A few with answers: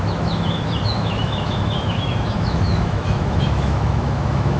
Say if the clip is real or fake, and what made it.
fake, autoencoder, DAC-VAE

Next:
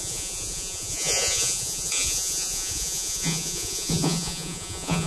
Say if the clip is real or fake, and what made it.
fake, vocoder, Vocos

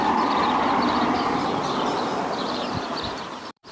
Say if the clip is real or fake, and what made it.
fake, vocoder, BigVGAN v2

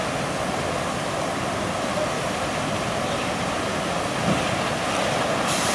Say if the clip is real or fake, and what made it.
real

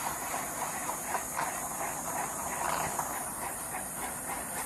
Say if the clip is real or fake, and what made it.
real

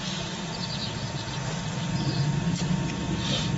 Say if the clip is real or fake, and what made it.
real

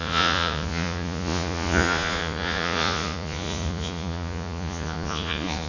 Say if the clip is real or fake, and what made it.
fake, vocoder, Vocos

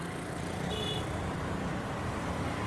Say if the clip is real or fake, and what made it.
real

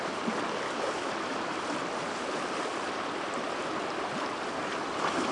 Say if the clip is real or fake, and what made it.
fake, vocoder, BigVGAN v2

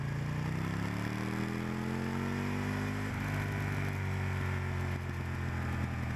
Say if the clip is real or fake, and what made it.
real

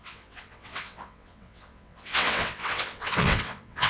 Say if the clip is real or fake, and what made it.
fake, vocoder, WaveNeXt